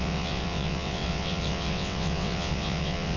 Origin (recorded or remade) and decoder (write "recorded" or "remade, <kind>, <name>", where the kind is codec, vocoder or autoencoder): remade, vocoder, WaveNeXt